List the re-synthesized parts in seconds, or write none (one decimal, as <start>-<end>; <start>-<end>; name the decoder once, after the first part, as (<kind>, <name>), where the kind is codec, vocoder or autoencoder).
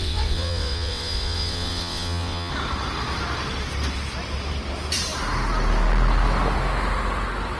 0.0-2.5 (vocoder, WaveNeXt)